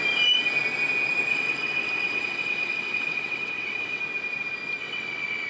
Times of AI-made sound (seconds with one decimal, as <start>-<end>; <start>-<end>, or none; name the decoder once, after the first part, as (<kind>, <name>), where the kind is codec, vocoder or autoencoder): 1.3-4.0 (vocoder, WaveNeXt); 4.8-5.5